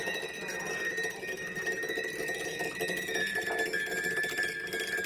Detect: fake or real real